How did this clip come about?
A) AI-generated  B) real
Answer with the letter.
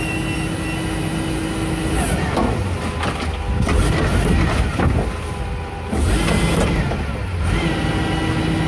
B